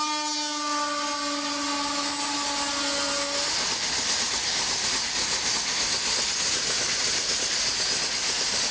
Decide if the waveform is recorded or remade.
recorded